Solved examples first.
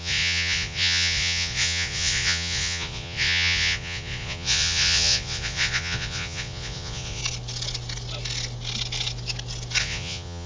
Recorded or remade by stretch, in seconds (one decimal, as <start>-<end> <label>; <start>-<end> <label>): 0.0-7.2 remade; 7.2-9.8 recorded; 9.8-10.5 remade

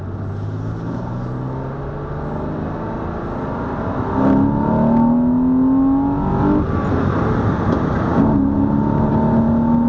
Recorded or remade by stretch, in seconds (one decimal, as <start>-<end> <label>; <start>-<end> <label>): 0.0-9.9 recorded

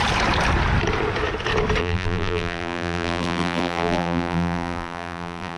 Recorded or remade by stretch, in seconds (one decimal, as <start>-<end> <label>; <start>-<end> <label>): 0.0-1.8 recorded; 1.8-5.6 remade

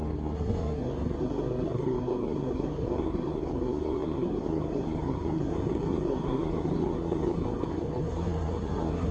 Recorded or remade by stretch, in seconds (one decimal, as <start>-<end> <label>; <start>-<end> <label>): 0.0-9.1 remade

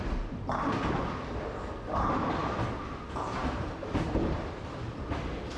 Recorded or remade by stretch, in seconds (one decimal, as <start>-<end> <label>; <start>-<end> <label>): 0.0-3.4 recorded; 3.4-4.6 remade; 4.6-5.6 recorded

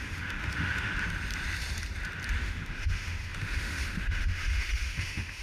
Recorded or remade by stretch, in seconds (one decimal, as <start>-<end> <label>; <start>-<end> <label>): 0.0-0.9 remade; 0.9-2.4 recorded; 2.4-5.4 remade